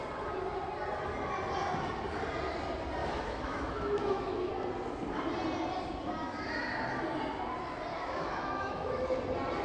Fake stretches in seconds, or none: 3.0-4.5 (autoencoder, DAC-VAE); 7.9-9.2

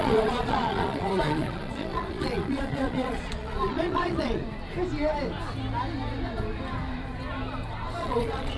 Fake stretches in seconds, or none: 0.0-4.4 (vocoder, Vocos); 8.0-8.6

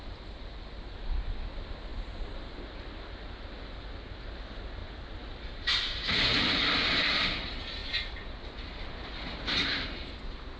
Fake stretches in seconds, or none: none

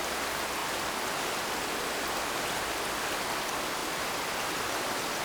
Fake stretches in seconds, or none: none